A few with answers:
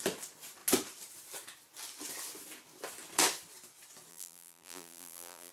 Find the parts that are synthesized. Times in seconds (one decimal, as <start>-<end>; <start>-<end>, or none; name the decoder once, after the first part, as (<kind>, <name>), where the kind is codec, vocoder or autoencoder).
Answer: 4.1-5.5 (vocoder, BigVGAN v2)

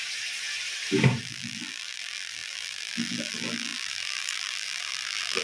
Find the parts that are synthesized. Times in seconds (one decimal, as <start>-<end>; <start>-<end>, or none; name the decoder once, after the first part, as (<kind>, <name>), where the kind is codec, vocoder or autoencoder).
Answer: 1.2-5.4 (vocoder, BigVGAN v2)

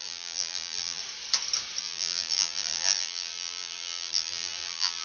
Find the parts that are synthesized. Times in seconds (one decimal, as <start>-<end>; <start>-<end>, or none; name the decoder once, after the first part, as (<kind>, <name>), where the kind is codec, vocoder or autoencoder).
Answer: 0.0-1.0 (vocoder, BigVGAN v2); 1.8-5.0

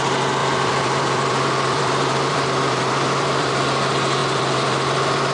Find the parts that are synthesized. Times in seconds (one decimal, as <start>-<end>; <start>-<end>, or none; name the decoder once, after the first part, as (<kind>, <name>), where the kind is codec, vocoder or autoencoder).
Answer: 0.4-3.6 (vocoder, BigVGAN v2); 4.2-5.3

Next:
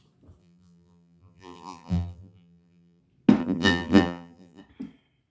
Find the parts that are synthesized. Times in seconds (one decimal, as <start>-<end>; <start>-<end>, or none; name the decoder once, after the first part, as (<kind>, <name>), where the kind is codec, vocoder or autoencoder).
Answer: 0.4-3.0 (vocoder, BigVGAN v2); 3.4-4.6